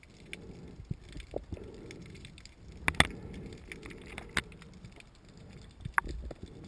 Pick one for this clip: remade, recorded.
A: recorded